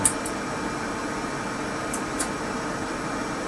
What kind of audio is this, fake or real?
real